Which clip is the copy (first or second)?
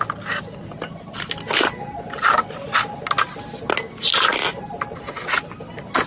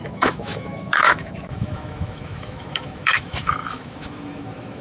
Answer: second